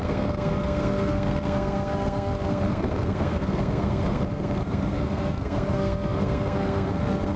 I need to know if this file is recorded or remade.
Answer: remade